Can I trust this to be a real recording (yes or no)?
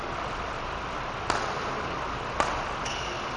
yes